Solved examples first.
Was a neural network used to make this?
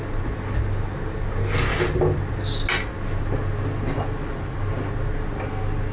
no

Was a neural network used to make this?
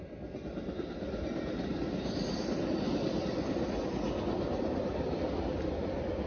no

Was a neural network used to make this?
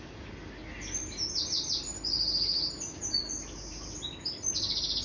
no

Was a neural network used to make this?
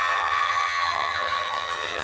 yes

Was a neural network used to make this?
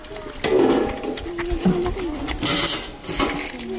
no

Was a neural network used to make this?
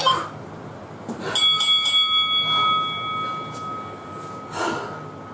no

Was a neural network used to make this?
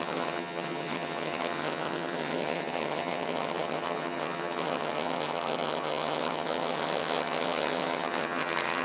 yes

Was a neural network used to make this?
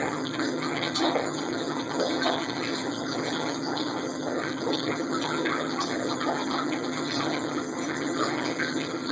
yes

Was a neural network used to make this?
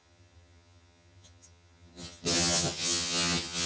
yes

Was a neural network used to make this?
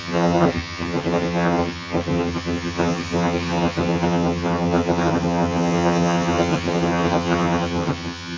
yes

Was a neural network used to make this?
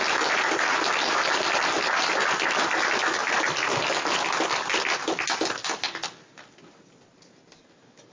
no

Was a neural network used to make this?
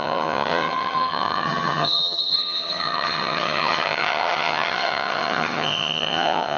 yes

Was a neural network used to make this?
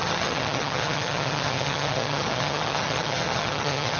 yes